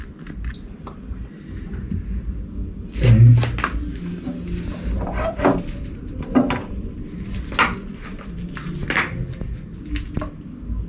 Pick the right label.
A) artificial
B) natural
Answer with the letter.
B